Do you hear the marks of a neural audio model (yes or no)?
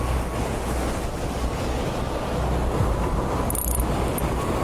no